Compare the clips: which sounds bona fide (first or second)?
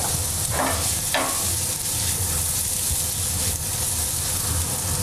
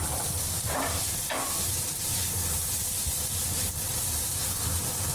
first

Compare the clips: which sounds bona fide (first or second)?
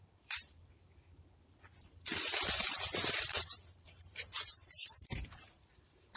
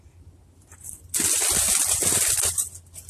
second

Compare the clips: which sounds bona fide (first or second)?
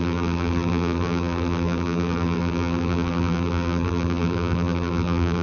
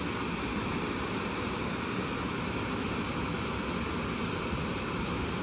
second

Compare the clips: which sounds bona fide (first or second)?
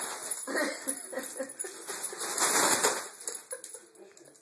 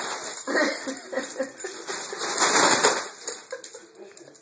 first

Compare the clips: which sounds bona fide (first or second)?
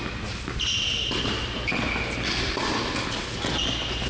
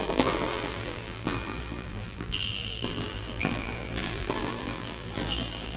first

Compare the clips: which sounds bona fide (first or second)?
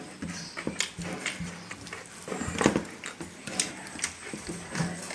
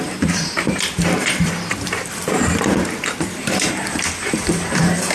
first